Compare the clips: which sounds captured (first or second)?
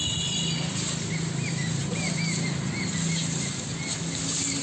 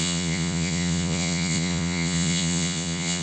first